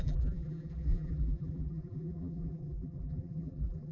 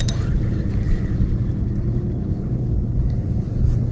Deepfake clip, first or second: first